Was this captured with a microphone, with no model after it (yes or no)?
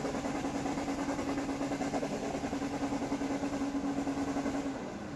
yes